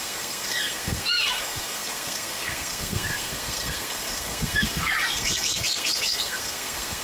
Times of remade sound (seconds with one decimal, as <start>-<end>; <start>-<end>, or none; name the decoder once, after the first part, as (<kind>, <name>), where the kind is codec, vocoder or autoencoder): 0.0-7.0 (codec, SNAC)